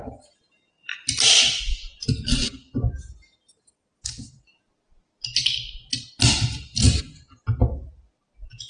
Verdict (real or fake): real